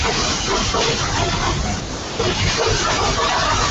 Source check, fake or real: real